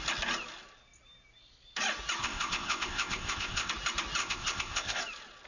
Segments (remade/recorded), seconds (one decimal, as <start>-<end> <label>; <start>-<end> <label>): 0.0-2.2 recorded; 2.2-3.7 remade; 3.7-4.2 recorded; 4.2-5.0 remade; 5.0-5.5 recorded